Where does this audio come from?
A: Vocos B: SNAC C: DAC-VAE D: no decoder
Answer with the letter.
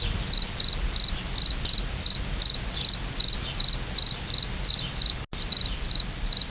D